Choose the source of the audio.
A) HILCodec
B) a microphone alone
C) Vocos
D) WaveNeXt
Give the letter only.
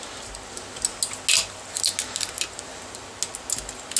B